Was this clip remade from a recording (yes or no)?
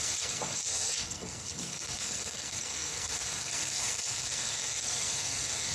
yes